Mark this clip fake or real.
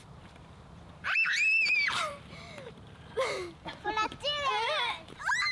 fake